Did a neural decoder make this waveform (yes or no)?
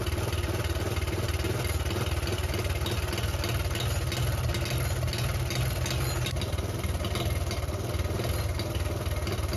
no